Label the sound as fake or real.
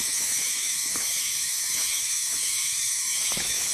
fake